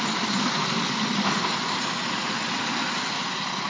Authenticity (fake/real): real